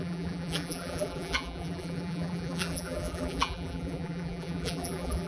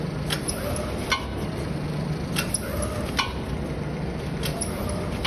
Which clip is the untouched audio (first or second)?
second